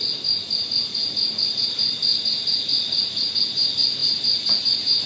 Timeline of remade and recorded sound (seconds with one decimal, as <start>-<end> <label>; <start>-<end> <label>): 0.0-5.1 recorded

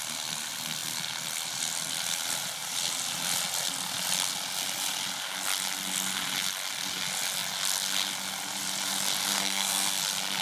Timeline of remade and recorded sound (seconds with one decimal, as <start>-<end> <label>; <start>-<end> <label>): 0.0-9.3 recorded; 9.3-10.0 remade; 10.0-10.4 recorded

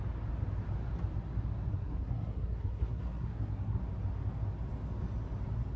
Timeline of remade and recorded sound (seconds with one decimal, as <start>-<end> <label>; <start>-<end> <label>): 0.0-1.7 recorded; 1.7-3.8 remade; 3.8-5.8 recorded